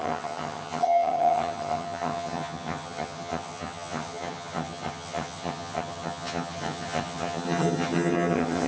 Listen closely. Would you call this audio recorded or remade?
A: remade